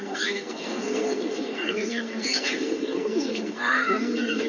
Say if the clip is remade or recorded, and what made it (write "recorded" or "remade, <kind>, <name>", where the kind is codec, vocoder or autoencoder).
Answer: remade, codec, SNAC